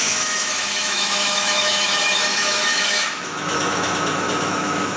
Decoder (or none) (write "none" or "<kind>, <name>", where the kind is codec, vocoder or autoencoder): autoencoder, DAC-VAE